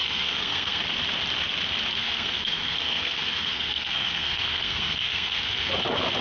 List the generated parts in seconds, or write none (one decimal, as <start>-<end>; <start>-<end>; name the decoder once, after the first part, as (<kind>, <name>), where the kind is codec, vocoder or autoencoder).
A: 0.0-0.8 (codec, SNAC); 2.0-5.7